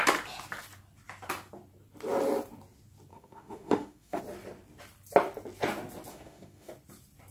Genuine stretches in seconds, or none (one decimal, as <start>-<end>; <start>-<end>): 0.0-3.1; 4.2-6.1; 6.7-7.3